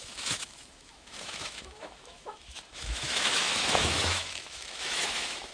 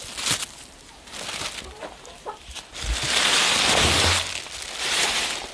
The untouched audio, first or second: second